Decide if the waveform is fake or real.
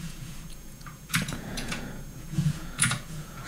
fake